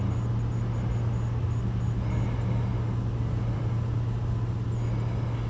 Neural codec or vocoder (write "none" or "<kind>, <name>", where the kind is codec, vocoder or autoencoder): none